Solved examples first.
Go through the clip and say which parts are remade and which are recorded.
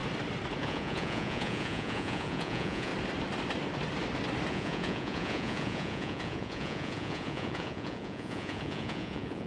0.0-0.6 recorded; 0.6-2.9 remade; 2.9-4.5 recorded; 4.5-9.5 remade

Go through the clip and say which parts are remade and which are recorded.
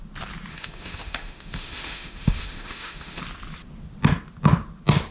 0.0-0.5 recorded; 0.5-3.2 remade; 3.2-5.1 recorded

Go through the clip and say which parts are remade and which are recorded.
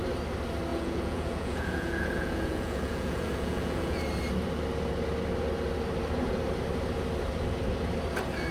0.0-0.7 recorded; 0.7-4.0 remade; 4.0-8.5 recorded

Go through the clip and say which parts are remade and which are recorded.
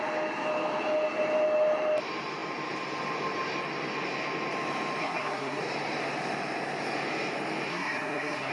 0.0-5.0 recorded; 5.0-5.6 remade; 5.6-7.7 recorded; 7.7-8.5 remade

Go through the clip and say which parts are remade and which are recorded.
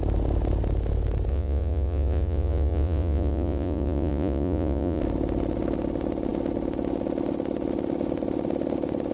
0.0-1.3 recorded; 1.3-5.0 remade; 5.0-9.1 recorded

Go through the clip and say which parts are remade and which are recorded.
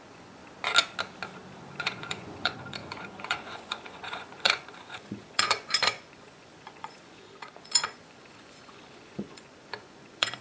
0.0-0.4 remade; 0.4-1.8 recorded; 1.8-10.4 remade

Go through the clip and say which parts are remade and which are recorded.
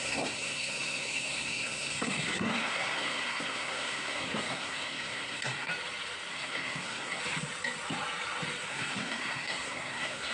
0.0-5.7 remade; 5.7-6.3 recorded; 6.3-7.2 remade; 7.2-8.7 recorded; 8.7-10.3 remade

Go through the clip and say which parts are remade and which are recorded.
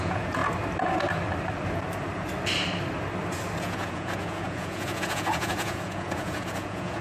0.0-0.4 remade; 0.4-3.6 recorded; 3.6-7.0 remade